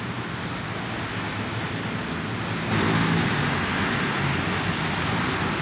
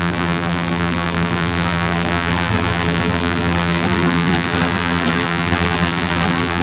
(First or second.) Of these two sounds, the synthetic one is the second